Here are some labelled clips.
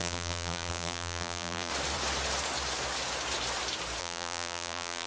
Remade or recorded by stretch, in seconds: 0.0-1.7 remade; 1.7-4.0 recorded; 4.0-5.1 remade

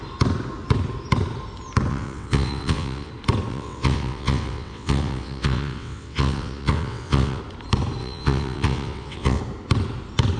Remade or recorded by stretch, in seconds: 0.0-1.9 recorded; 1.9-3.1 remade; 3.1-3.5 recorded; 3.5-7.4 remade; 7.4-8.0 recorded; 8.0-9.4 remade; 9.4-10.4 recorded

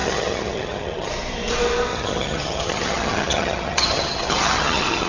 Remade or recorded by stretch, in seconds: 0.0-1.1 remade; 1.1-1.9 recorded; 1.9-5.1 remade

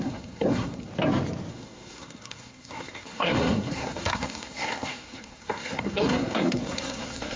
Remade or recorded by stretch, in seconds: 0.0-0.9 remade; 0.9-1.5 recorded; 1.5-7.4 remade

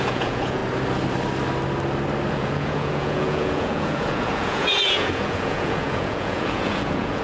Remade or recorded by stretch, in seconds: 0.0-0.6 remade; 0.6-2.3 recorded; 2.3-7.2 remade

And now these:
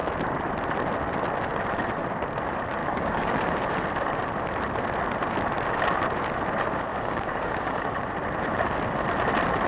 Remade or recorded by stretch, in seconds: 0.0-2.8 recorded; 2.8-3.3 remade; 3.3-6.9 recorded; 6.9-7.8 remade; 7.8-9.7 recorded

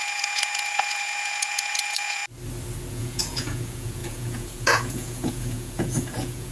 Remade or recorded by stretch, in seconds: 0.0-2.2 remade; 2.2-2.9 recorded; 2.9-6.5 remade